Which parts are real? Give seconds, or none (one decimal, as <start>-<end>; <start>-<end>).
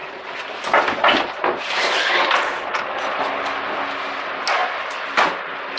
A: 0.0-5.8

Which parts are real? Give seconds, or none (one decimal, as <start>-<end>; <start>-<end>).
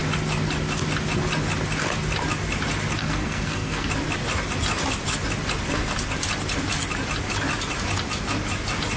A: 0.0-3.0; 3.9-9.0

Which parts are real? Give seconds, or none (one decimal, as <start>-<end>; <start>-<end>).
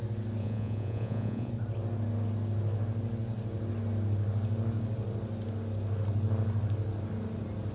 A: 0.0-0.4; 1.5-7.7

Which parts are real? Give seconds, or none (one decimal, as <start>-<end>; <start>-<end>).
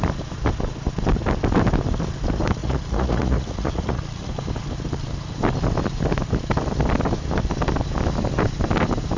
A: 0.0-2.6; 4.3-9.2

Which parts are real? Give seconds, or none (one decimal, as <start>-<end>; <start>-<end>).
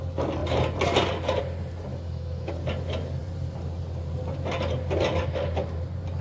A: 0.0-1.9; 2.5-6.2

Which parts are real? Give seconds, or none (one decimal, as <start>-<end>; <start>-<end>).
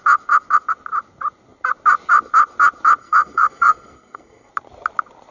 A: 0.0-3.0; 4.5-5.3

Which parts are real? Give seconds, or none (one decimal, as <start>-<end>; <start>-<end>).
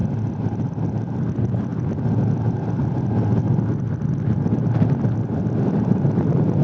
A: 0.0-6.6